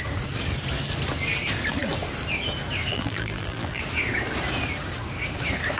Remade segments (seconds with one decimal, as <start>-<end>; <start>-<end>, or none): 2.9-3.8